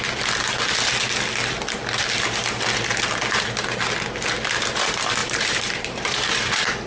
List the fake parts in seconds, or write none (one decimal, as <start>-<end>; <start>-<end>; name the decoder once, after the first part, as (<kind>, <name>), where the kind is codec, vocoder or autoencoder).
5.2-6.3 (vocoder, BigVGAN v2)